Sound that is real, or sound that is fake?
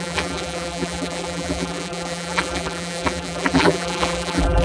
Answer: fake